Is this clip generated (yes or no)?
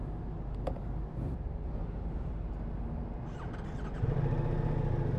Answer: no